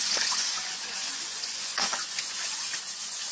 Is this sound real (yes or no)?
no